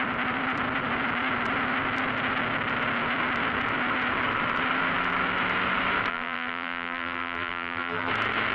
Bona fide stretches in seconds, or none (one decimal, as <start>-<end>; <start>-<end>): 0.0-6.1; 8.1-8.5